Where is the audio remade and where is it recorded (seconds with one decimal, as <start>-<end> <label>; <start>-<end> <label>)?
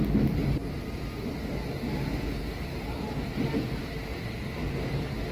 0.0-5.3 recorded